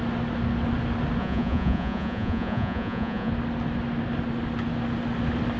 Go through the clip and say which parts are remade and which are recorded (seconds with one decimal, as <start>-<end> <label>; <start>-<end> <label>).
0.0-1.2 recorded; 1.2-3.3 remade; 3.3-5.6 recorded